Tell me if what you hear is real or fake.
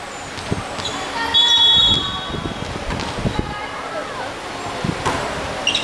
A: real